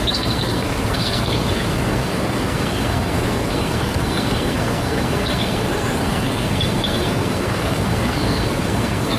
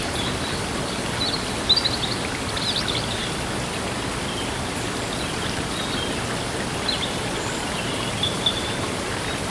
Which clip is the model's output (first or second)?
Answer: first